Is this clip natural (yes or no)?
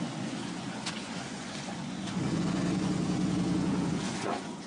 no